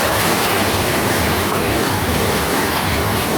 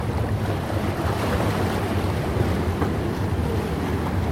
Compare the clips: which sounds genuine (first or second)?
second